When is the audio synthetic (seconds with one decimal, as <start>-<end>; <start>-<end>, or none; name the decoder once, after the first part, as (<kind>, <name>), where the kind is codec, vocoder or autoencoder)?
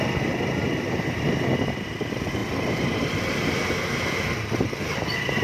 none